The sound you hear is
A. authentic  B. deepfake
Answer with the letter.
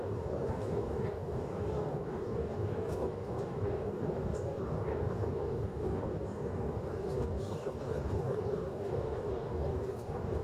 B